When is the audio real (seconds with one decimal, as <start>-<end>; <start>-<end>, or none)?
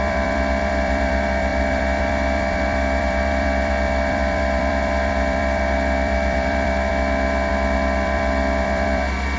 6.9-7.5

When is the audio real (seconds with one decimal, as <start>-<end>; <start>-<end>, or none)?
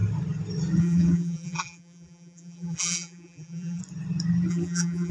0.0-0.8; 3.8-4.5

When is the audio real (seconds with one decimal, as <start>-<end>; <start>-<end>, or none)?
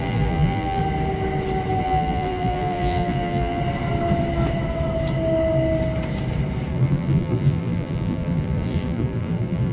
0.8-1.8; 3.6-6.7